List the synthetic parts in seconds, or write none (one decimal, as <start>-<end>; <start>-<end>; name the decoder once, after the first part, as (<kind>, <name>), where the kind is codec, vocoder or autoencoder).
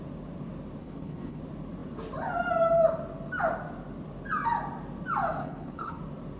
0.8-1.4 (codec, HILCodec); 5.4-6.0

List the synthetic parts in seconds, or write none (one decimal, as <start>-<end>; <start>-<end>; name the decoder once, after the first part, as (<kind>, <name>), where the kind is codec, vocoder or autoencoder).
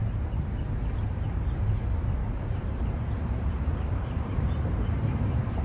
0.0-1.4 (vocoder, BigVGAN v2); 2.2-5.6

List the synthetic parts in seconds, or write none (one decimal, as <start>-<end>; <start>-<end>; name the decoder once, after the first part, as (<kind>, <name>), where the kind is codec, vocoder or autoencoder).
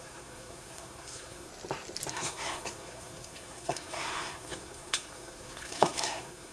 0.0-1.5 (codec, SNAC); 2.1-6.5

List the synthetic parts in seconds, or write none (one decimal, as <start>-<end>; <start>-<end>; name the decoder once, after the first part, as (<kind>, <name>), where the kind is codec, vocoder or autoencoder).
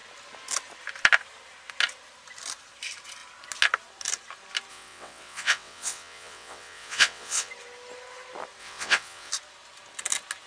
4.7-7.5 (vocoder, WaveNeXt); 8.6-9.3